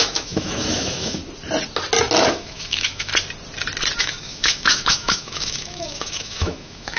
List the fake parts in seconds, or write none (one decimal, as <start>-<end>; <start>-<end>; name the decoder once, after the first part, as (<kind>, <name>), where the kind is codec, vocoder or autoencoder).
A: 0.0-1.2 (autoencoder, DAC-VAE); 2.3-3.1; 4.0-7.0